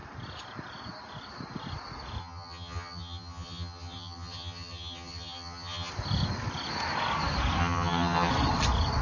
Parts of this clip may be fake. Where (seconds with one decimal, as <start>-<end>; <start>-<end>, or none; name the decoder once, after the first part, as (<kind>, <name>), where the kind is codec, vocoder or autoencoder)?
2.2-5.9 (vocoder, HiFi-GAN); 7.6-8.3